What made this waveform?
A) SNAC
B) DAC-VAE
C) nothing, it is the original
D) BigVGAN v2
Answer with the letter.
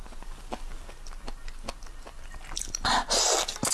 C